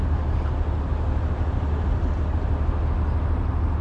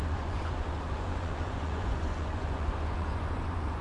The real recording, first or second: first